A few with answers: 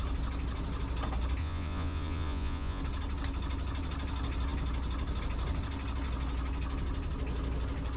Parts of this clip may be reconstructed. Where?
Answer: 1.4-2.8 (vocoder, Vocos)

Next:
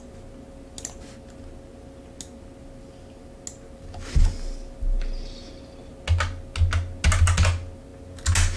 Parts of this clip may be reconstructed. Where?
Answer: none

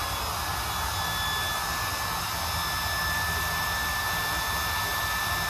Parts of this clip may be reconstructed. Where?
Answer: none

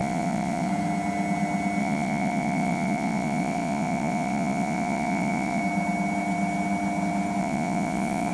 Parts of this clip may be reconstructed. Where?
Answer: 0.0-0.7 (vocoder, Vocos); 1.8-5.6; 7.4-8.3

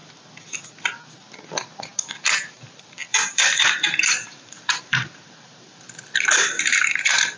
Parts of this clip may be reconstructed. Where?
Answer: 2.5-7.4 (vocoder, BigVGAN v2)

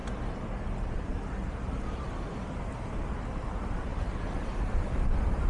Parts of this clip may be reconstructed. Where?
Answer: none

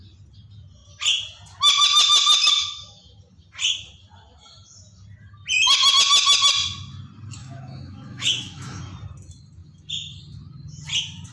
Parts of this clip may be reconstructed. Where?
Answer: 7.4-8.8 (autoencoder, DAC-VAE)

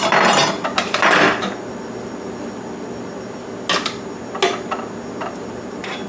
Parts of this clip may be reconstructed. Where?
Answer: none